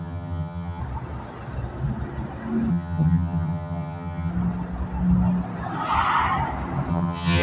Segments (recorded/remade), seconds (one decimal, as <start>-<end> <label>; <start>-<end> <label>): 0.0-0.8 remade; 0.8-2.7 recorded; 2.7-4.3 remade; 4.3-6.9 recorded; 6.9-7.4 remade